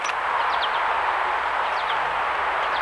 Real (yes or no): yes